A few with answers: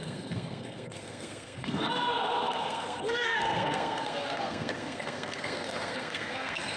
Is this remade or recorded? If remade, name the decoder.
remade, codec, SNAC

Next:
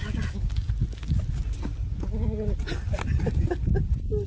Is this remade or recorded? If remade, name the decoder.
recorded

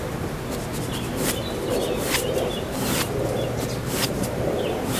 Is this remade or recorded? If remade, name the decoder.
recorded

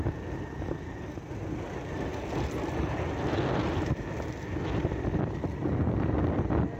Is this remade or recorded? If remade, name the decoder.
recorded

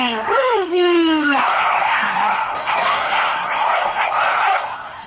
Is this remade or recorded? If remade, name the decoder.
remade, codec, SNAC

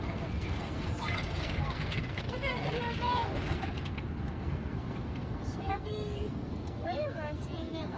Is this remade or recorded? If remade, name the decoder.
remade, codec, SNAC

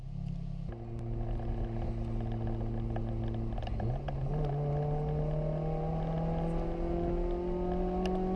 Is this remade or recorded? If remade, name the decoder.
recorded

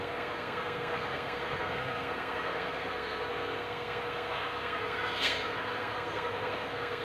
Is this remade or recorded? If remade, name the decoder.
remade, codec, SNAC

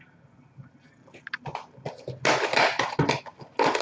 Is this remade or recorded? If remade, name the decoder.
recorded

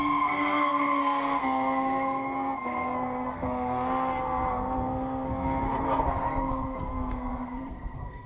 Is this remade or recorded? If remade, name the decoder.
remade, codec, SNAC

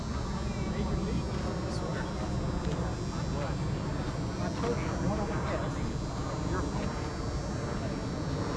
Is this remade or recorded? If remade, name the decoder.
recorded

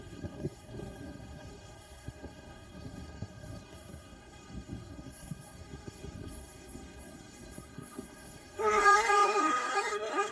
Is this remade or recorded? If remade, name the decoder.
remade, codec, SNAC